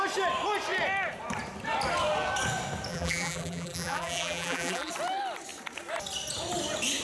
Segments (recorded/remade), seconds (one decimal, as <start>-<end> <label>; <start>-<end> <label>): 0.0-2.9 recorded; 2.9-4.9 remade; 4.9-7.0 recorded